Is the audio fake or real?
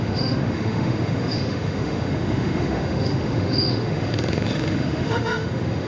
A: fake